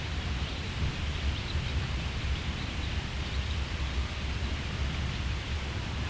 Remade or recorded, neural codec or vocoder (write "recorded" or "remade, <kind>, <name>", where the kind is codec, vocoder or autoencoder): remade, vocoder, BigVGAN v2